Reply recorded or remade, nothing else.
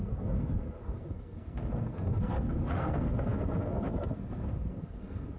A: remade